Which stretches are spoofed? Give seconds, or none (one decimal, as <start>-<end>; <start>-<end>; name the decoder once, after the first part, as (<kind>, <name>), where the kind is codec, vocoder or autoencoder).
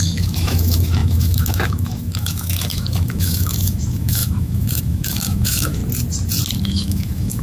0.0-5.8 (autoencoder, DAC-VAE); 6.6-7.4